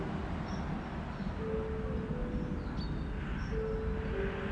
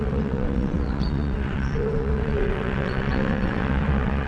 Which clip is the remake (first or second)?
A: second